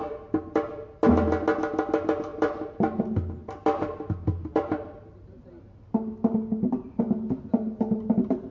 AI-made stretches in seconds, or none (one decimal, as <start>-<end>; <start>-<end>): 2.3-3.0; 3.4-7.0; 7.5-8.5